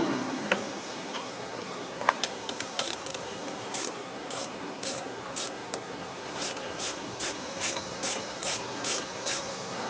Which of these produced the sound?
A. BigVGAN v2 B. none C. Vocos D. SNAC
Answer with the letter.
D